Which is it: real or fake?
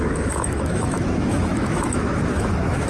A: fake